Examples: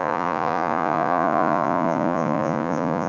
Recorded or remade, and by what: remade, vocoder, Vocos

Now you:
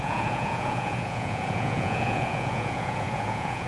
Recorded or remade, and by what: remade, vocoder, Vocos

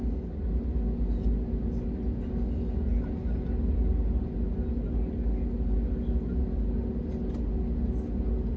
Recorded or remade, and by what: recorded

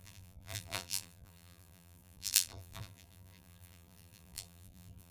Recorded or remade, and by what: remade, vocoder, BigVGAN v2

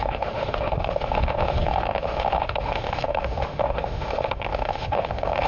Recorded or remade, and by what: remade, autoencoder, DAC-VAE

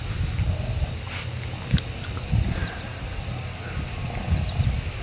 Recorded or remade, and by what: recorded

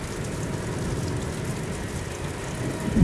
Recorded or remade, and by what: recorded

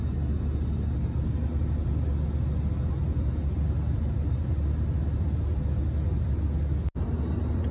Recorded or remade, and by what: recorded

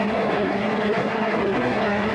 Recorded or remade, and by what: remade, codec, SNAC